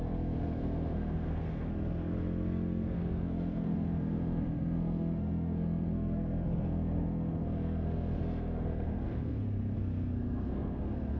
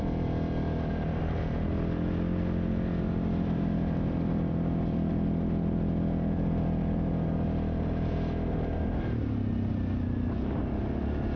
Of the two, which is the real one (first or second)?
second